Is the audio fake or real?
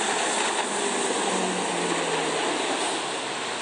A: real